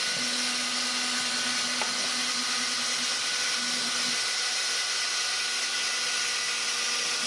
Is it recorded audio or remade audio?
recorded